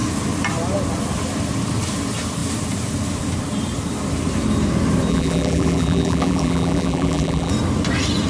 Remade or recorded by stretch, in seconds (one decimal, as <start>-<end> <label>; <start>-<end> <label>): 0.0-5.1 recorded; 5.1-7.5 remade; 7.5-8.3 recorded